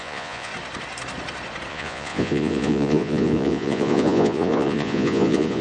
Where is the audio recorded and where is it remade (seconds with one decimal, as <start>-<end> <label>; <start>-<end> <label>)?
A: 0.0-0.5 remade; 0.5-1.7 recorded; 1.7-5.6 remade